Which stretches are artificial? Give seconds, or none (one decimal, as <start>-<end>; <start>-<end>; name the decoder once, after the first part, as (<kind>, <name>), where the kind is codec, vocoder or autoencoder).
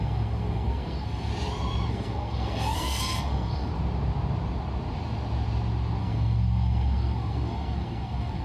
0.0-1.3 (codec, SNAC); 1.9-3.7; 6.0-8.4